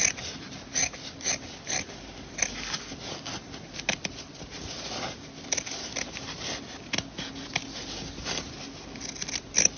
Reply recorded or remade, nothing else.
recorded